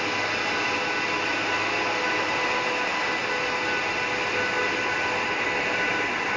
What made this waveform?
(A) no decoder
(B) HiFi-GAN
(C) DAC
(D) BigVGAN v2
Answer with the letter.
A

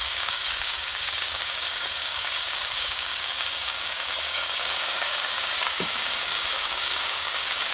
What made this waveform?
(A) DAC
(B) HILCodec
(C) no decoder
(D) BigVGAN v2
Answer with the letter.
A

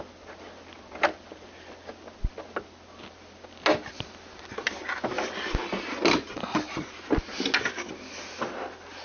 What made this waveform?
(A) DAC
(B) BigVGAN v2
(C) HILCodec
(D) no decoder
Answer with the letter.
D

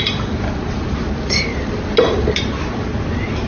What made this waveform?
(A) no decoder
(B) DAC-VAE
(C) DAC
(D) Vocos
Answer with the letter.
A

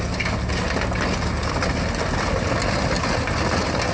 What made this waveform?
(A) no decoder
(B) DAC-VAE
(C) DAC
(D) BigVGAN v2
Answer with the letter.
A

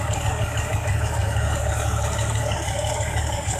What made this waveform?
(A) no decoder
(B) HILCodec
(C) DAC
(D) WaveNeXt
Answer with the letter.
C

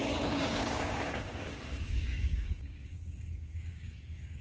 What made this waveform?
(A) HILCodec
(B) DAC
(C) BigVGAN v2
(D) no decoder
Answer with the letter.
B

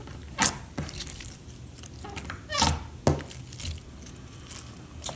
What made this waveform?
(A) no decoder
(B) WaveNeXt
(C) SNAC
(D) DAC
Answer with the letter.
A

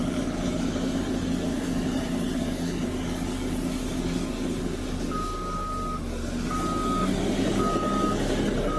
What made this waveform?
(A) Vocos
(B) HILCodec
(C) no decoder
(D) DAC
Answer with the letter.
D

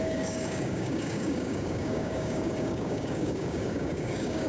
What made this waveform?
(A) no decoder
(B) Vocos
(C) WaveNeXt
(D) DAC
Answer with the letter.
D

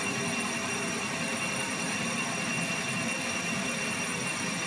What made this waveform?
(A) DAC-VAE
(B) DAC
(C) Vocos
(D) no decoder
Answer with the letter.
D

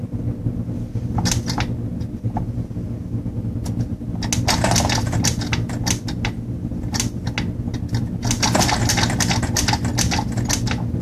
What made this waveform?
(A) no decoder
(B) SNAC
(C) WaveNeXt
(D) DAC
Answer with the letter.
A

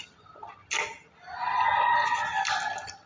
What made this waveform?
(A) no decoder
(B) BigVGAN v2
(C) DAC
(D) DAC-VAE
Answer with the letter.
A